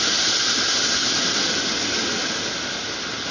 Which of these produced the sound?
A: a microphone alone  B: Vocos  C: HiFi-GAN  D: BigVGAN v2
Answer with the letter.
A